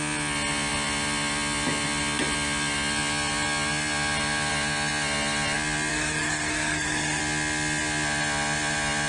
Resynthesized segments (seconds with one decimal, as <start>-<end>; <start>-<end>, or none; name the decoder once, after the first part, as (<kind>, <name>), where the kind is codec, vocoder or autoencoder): 5.9-7.2 (codec, SNAC)